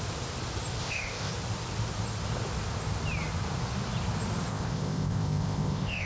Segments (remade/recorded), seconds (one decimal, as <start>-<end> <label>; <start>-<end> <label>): 0.0-0.8 recorded; 0.8-1.3 remade; 1.3-4.5 recorded; 4.5-6.1 remade

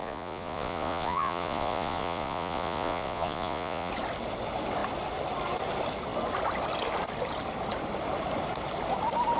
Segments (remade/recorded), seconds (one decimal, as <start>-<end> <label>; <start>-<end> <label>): 0.0-3.9 remade; 3.9-9.4 recorded

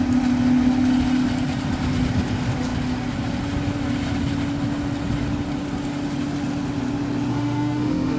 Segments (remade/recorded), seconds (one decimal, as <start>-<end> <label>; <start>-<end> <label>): 0.0-7.3 recorded; 7.3-8.2 remade

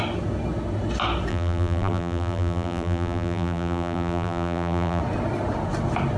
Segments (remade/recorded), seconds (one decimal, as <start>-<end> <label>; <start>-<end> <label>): 0.0-1.3 recorded; 1.3-5.0 remade; 5.0-6.2 recorded

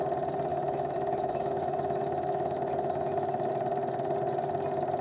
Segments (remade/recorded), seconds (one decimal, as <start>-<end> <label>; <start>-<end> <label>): 0.0-0.5 recorded; 0.5-3.5 remade; 3.5-5.0 recorded

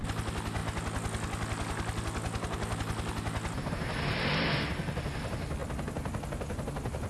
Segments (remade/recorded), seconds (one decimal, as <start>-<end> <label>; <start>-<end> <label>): 0.0-7.1 recorded

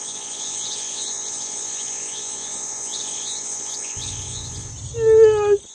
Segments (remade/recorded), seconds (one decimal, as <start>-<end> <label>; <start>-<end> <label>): 0.0-4.7 remade; 4.7-5.7 recorded